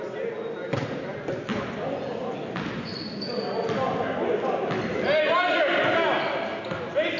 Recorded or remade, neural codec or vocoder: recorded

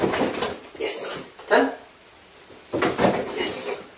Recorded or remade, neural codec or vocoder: recorded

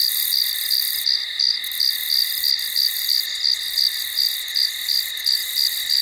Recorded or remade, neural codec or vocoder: recorded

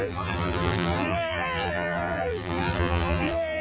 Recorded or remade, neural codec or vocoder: remade, vocoder, BigVGAN v2